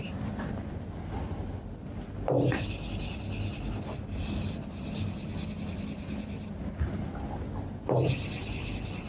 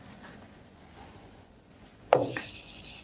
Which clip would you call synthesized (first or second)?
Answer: second